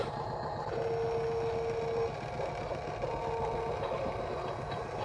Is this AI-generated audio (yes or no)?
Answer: no